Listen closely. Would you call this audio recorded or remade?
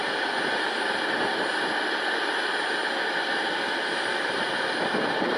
recorded